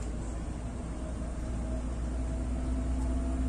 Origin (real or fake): real